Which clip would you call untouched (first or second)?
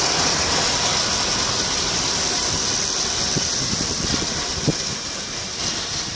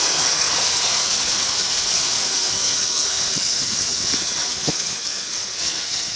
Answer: first